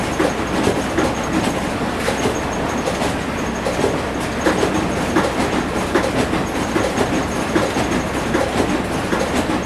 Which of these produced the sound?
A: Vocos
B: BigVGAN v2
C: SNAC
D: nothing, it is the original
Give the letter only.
B